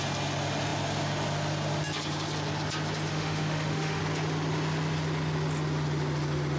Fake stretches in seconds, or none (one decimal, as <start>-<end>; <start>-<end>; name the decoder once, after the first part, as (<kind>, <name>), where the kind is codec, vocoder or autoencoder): 3.1-4.0 (autoencoder, DAC-VAE)